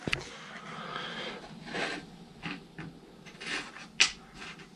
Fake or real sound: real